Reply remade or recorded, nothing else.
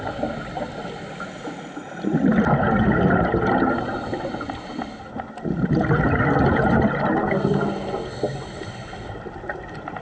recorded